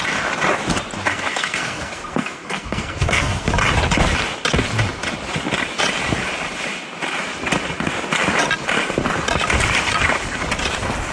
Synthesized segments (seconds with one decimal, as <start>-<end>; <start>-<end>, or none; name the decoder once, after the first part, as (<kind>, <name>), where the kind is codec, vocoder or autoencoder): 1.1-3.5 (codec, SNAC)